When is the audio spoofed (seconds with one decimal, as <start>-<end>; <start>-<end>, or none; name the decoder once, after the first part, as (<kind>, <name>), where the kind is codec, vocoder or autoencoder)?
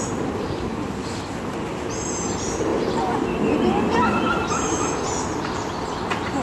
none